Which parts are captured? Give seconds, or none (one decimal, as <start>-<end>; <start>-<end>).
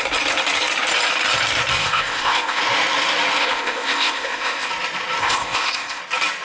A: 0.0-1.8; 2.6-3.4; 4.7-5.2; 6.0-6.4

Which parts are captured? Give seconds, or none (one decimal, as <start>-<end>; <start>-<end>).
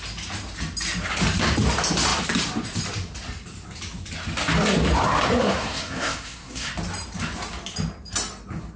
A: 0.0-5.4; 6.7-8.8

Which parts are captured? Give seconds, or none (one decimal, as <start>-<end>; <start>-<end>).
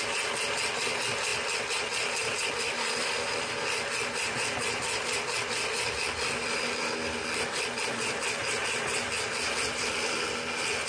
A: 0.0-10.9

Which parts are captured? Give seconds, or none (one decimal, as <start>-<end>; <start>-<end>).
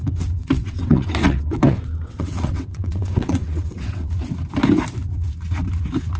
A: 0.0-0.4; 4.1-6.2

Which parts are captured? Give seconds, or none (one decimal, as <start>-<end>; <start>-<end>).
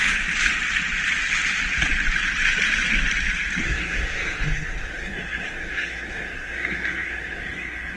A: 0.0-3.6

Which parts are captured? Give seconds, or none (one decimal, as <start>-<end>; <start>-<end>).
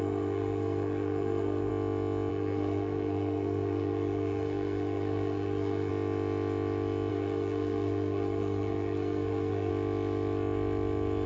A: 1.7-2.3; 5.9-7.1; 9.7-11.3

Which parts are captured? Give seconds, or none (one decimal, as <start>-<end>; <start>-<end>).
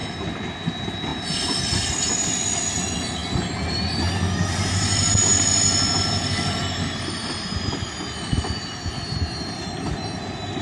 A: 0.0-10.6